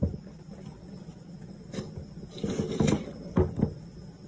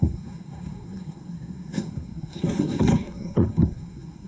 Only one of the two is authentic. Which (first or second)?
first